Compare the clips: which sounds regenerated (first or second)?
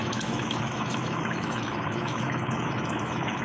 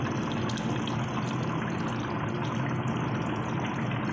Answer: first